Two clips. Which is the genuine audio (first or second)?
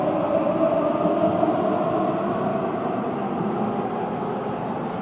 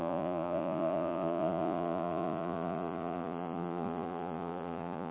first